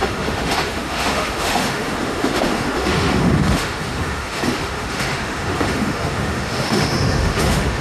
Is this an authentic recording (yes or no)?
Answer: no